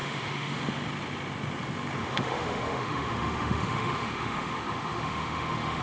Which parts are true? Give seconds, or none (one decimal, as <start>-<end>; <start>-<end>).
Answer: 0.6-2.0